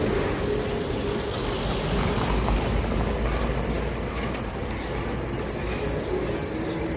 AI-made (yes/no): no